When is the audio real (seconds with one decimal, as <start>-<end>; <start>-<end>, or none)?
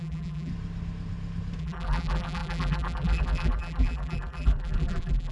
0.5-1.6